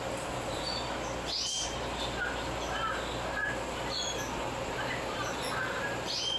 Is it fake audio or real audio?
real